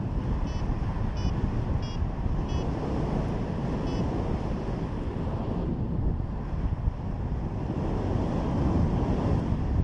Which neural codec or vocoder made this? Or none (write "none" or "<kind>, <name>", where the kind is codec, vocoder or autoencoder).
none